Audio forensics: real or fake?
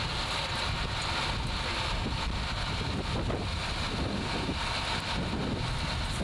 real